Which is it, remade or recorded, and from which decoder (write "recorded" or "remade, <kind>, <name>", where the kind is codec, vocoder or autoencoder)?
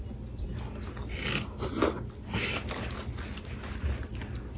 recorded